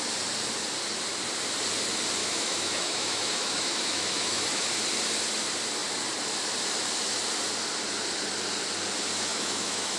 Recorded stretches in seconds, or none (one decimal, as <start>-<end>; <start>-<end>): 0.0-2.2; 4.7-9.3